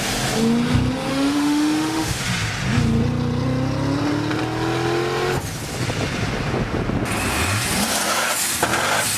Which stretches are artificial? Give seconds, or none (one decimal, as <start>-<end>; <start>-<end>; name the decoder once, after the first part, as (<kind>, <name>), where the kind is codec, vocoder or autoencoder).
1.1-2.2 (autoencoder, DAC-VAE)